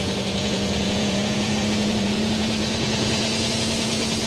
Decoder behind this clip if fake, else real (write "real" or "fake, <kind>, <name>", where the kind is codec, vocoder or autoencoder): fake, vocoder, Vocos